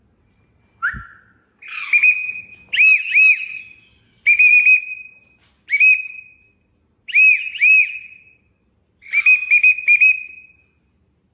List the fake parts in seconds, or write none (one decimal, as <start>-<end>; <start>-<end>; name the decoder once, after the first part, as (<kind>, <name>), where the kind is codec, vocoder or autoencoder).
none